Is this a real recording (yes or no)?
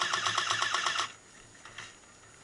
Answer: yes